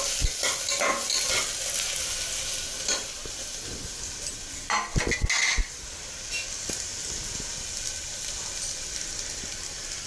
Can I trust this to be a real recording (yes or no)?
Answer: yes